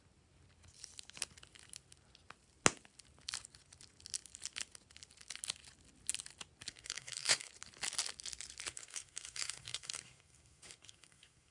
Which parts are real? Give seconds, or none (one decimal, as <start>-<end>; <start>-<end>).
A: 0.0-6.7; 7.5-8.7